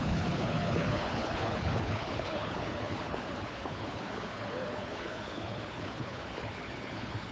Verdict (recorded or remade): remade